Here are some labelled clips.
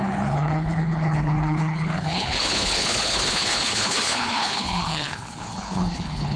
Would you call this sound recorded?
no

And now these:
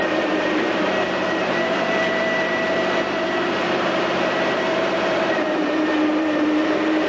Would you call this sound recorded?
no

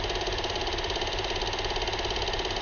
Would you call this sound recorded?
yes